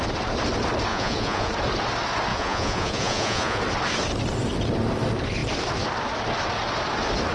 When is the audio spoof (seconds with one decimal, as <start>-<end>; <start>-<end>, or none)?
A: 0.9-1.5; 2.3-3.6